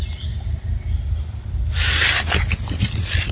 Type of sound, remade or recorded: recorded